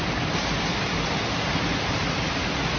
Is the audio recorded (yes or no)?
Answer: yes